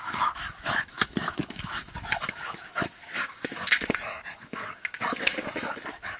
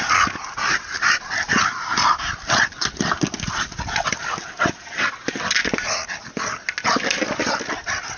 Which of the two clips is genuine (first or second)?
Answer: second